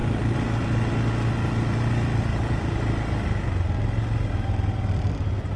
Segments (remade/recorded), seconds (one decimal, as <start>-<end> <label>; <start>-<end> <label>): 0.0-0.9 remade; 0.9-2.3 recorded; 2.3-2.9 remade; 2.9-5.6 recorded

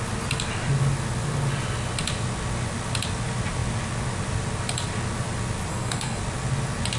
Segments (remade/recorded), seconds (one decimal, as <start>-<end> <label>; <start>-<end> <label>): 0.0-5.7 recorded; 5.7-6.2 remade; 6.2-7.0 recorded

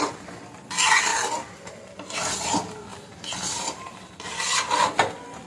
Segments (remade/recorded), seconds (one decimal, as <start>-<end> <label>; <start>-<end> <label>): 0.0-5.5 recorded

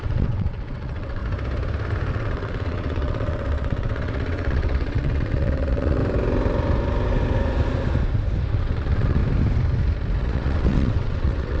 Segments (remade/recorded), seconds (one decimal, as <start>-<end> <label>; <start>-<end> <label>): 0.0-1.2 remade; 1.2-2.1 recorded; 2.1-6.0 remade; 6.0-8.5 recorded; 8.5-9.2 remade; 9.2-10.2 recorded; 10.2-11.6 remade